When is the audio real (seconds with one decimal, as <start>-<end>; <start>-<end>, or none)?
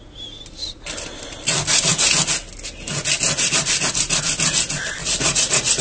0.0-5.0